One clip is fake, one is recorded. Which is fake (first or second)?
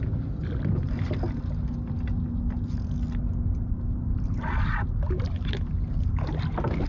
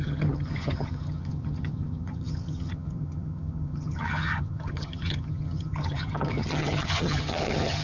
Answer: second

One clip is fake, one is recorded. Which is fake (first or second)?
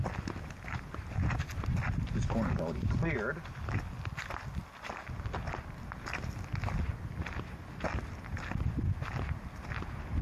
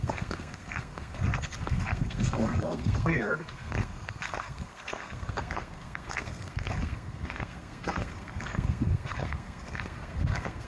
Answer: second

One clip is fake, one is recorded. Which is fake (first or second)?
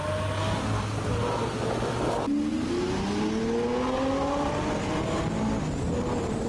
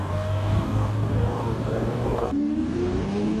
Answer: second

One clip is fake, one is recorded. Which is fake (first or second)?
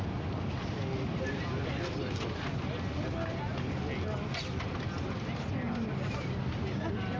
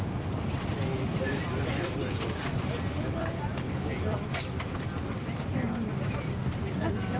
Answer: second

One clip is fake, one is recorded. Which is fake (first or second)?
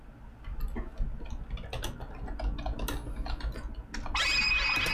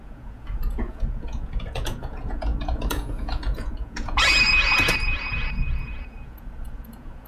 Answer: second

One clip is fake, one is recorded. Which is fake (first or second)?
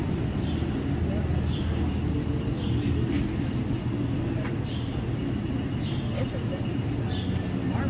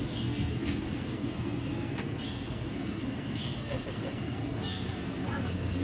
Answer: second